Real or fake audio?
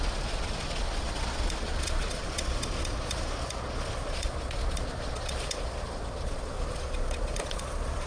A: fake